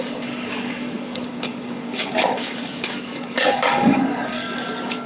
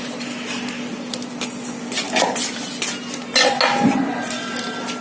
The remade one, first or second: first